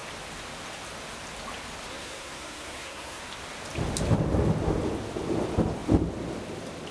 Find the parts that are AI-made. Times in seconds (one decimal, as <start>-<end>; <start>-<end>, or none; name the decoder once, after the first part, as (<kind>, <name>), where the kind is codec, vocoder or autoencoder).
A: 1.9-3.2 (codec, SNAC)